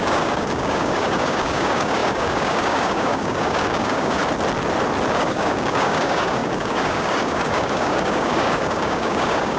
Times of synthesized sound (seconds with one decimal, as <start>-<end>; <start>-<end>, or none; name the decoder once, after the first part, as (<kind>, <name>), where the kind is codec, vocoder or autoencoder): 0.0-4.2 (codec, DAC); 5.1-9.6